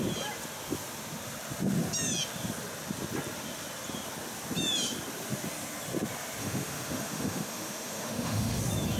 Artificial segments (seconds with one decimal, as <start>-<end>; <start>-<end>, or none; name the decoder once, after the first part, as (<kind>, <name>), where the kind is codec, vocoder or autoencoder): 6.4-8.6 (autoencoder, DAC-VAE)